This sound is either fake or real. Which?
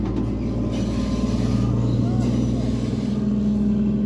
real